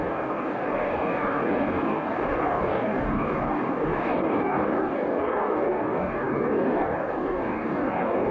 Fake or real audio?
fake